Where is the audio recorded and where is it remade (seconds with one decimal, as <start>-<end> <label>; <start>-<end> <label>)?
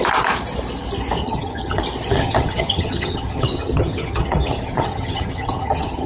0.0-1.2 recorded; 1.2-1.8 remade; 1.8-2.2 recorded; 2.2-6.1 remade